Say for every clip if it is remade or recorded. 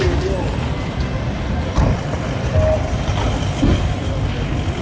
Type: recorded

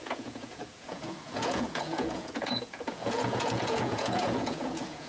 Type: remade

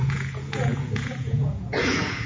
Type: remade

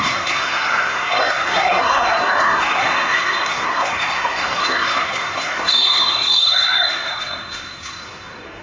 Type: remade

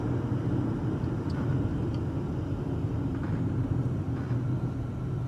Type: recorded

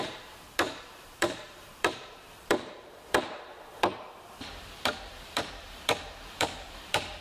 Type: remade